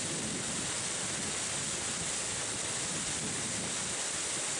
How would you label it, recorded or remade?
recorded